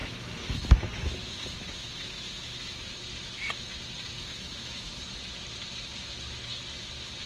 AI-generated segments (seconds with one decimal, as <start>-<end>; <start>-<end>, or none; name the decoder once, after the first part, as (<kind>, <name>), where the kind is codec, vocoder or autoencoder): 0.0-2.8 (autoencoder, DAC-VAE); 4.2-5.0